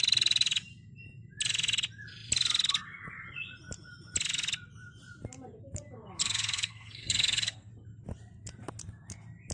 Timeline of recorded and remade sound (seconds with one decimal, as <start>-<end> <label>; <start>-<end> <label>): 0.0-6.2 recorded; 6.2-7.7 remade; 7.7-9.5 recorded